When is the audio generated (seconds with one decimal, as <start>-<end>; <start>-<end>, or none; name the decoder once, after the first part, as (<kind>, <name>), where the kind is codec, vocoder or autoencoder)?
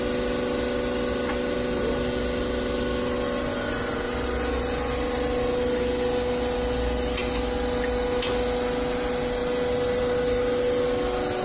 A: none